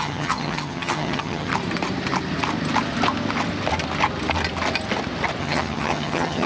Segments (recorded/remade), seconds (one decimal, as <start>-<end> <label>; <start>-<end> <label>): 0.0-1.5 remade; 1.5-5.4 recorded; 5.4-6.5 remade